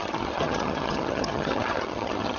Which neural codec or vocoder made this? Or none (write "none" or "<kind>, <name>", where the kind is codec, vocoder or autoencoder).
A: vocoder, HiFi-GAN